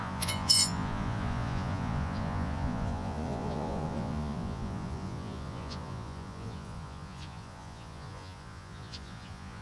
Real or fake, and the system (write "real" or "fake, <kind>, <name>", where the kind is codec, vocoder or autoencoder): fake, vocoder, Vocos